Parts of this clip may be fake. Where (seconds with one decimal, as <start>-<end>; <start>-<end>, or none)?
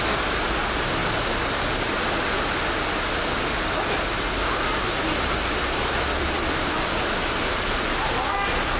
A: none